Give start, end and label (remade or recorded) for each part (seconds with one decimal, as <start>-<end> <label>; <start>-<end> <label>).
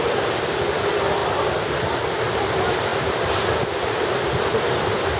0.0-5.2 recorded